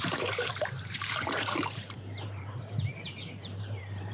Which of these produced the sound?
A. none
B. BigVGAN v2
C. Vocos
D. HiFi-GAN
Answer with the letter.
B